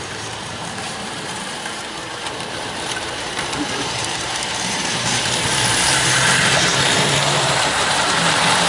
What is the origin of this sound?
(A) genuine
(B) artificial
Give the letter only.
B